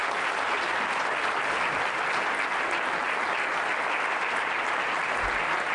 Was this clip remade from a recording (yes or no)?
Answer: no